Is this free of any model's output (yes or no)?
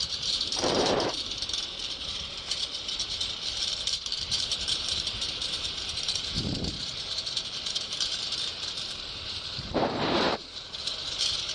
no